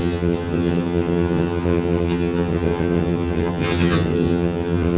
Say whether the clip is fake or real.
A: fake